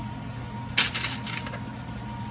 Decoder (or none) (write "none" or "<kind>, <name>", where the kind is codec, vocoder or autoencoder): none